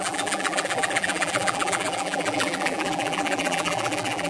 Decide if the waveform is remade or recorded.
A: remade